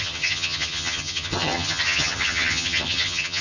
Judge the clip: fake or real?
fake